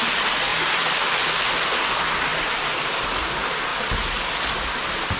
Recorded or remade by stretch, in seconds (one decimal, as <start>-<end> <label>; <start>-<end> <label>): 0.0-5.2 recorded